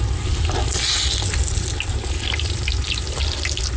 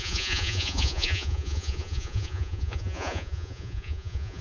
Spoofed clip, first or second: second